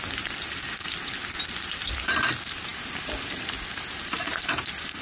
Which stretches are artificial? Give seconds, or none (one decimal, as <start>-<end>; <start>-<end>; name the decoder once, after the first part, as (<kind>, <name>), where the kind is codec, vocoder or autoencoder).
none